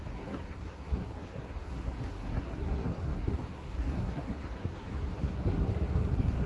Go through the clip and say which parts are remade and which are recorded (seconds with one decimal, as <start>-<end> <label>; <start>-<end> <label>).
0.0-6.5 remade